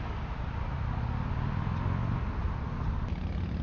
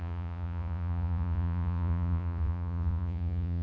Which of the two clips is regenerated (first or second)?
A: second